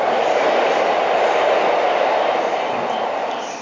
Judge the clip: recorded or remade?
recorded